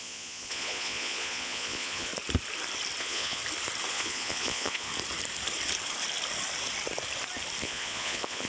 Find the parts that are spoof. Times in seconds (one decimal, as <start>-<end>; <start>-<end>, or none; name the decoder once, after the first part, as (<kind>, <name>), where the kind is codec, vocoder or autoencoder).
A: 0.0-2.1 (vocoder, Vocos); 3.0-3.4; 3.9-4.9; 7.6-8.5